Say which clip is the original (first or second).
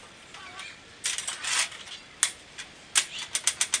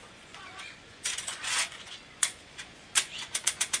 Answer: first